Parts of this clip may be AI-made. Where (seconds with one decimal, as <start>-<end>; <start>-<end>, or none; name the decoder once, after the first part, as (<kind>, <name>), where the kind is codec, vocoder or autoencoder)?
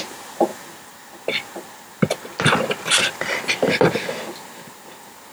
none